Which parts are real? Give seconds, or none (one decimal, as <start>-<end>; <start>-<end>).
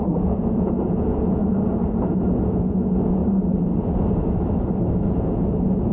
1.4-2.2; 3.2-5.1